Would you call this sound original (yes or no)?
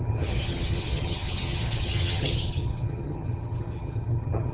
no